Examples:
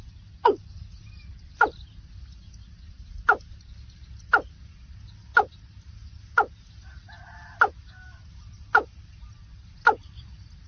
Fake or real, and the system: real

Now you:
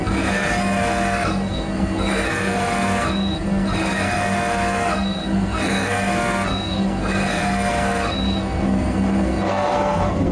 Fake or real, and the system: fake, codec, SNAC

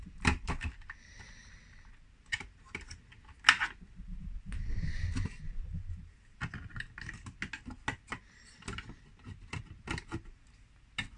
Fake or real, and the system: real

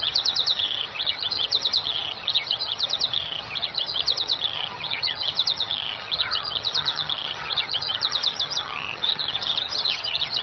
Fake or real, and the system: fake, vocoder, HiFi-GAN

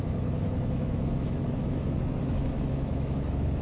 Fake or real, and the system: fake, autoencoder, DAC-VAE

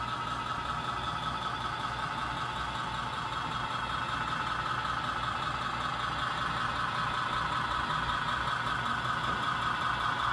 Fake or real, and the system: real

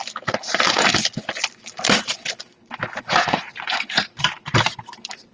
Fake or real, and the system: fake, vocoder, BigVGAN v2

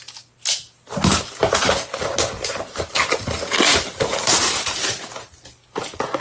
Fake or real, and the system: real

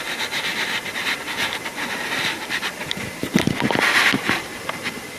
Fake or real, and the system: real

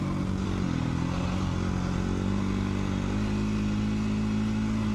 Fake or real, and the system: real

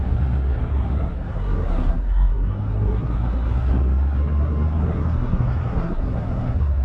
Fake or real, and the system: fake, codec, SNAC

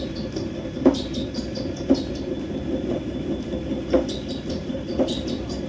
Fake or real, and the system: real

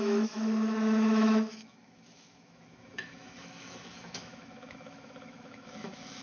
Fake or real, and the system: fake, autoencoder, DAC-VAE